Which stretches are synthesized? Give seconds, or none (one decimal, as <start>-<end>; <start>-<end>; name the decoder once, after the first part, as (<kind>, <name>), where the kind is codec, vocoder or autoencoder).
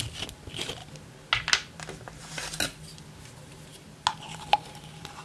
none